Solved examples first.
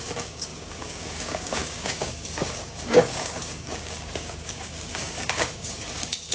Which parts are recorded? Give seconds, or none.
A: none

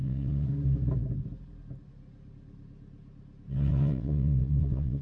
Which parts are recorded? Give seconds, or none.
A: 0.5-3.5

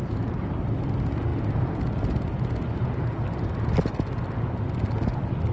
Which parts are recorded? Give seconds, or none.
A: 0.0-5.5

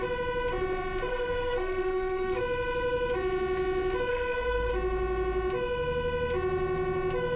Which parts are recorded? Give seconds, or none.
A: 0.0-1.1; 2.4-4.1; 4.7-7.4

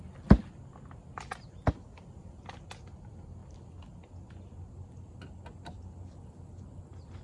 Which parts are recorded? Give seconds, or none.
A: 0.0-7.2